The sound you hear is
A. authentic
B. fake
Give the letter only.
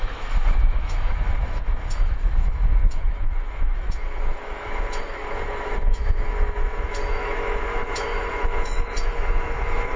B